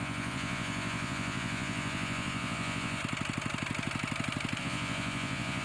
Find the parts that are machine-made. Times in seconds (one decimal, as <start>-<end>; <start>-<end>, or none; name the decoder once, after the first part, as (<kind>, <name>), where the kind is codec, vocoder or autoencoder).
0.0-3.0 (vocoder, Vocos); 4.6-5.6